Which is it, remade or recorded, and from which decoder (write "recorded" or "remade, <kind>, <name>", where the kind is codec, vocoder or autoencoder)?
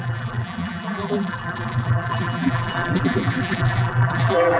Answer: remade, vocoder, BigVGAN v2